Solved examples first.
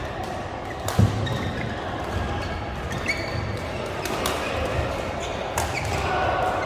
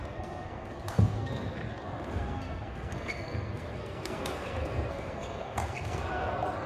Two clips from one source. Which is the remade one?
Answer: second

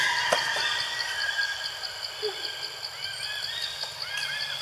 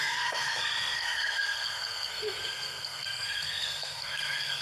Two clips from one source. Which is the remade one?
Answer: second